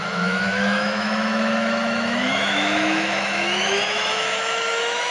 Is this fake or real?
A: fake